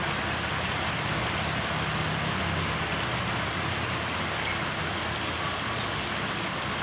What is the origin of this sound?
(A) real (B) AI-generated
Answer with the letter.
A